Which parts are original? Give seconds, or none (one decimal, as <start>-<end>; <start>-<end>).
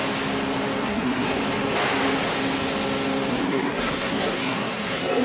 0.0-0.8; 1.4-3.3